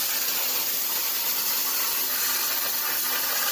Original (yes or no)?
yes